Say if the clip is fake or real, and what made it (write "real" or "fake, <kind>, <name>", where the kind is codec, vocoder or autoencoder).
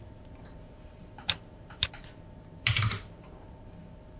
fake, vocoder, BigVGAN v2